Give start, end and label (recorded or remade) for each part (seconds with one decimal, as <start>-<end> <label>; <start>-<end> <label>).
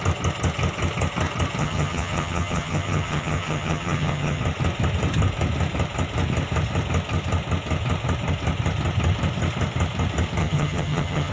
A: 0.0-1.6 recorded; 1.6-4.4 remade; 4.4-10.4 recorded; 10.4-11.3 remade